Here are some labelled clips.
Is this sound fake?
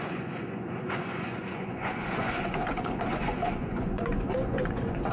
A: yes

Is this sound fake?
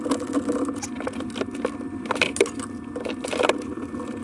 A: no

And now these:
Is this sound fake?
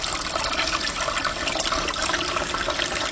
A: no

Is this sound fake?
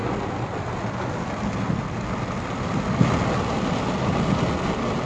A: no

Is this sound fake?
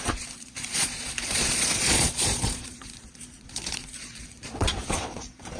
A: yes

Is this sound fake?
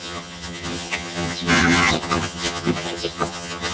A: yes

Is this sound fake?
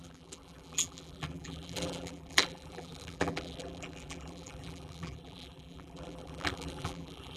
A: yes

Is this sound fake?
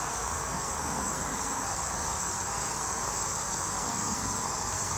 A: yes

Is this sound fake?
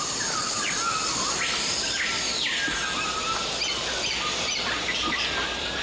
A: yes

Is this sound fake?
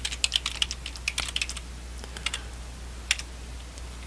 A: no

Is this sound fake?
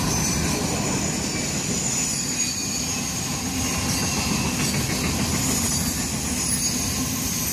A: no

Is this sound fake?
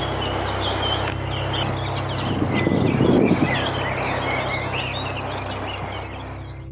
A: no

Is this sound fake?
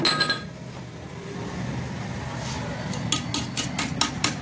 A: no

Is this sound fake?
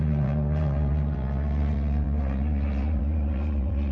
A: yes